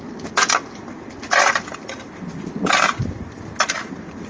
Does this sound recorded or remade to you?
recorded